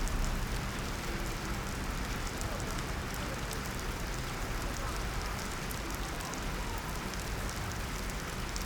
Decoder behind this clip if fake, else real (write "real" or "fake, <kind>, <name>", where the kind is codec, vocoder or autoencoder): fake, vocoder, BigVGAN v2